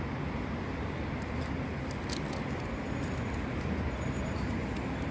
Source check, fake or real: real